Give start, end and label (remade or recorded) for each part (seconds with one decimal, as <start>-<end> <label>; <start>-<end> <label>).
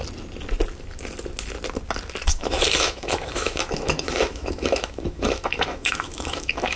0.0-2.3 recorded; 2.3-6.8 remade